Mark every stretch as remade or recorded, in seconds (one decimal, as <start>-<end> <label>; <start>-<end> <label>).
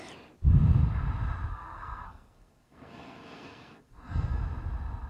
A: 0.0-1.5 recorded; 1.5-4.4 remade; 4.4-5.1 recorded